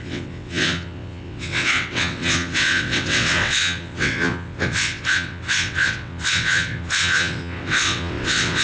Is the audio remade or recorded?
remade